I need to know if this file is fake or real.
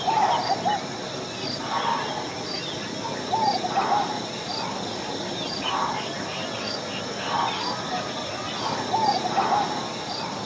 real